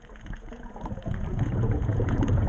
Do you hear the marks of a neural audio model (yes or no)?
yes